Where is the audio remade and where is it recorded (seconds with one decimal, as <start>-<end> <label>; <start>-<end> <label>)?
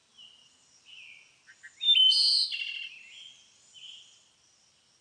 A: 0.0-5.0 recorded